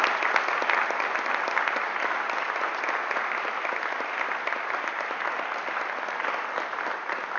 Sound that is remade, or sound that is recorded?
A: recorded